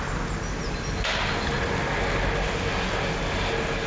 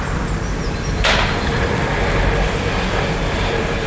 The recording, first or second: first